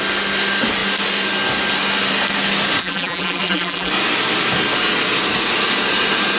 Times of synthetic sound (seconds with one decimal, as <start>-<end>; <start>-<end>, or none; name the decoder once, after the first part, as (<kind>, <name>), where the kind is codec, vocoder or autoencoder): 2.8-3.9 (vocoder, BigVGAN v2)